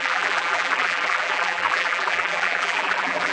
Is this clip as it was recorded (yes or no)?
no